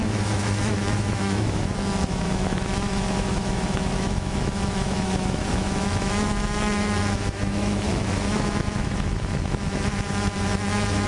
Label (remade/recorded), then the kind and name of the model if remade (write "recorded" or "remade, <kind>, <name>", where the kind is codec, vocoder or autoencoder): remade, autoencoder, DAC-VAE